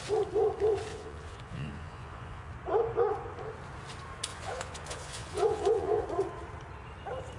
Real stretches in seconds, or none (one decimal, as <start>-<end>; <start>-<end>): 0.0-0.9; 2.5-4.3; 6.0-7.4